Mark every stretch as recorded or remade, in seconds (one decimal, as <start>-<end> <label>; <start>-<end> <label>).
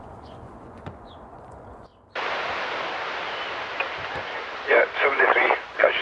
0.0-1.9 remade; 1.9-5.0 recorded; 5.0-6.0 remade